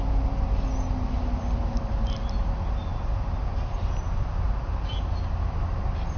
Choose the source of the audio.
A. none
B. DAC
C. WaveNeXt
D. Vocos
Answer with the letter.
A